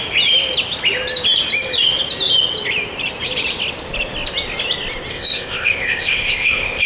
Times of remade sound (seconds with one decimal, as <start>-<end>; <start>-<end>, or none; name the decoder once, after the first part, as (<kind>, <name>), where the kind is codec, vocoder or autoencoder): 5.1-6.9 (codec, ZipCodec)